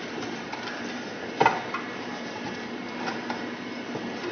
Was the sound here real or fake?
real